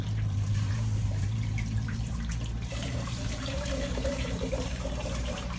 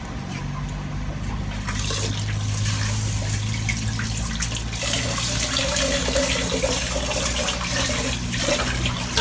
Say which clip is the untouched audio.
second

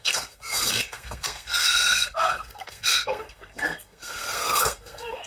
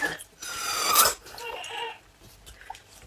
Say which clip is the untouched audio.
second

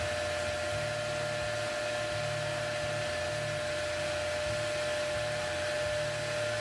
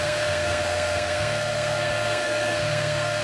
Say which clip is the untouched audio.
first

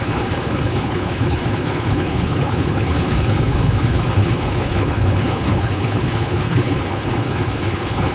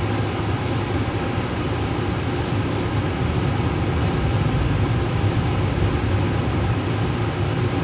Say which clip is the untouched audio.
second